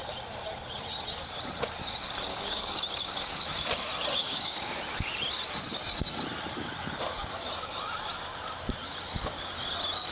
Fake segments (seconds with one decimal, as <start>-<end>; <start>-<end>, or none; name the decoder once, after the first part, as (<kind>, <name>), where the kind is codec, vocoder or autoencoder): 2.3-2.8 (codec, DAC); 4.2-4.8